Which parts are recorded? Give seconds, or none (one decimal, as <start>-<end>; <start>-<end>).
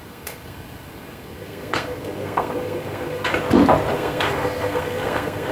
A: 3.3-3.9